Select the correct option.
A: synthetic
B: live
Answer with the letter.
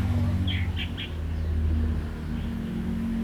B